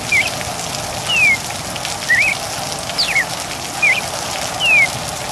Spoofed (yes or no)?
no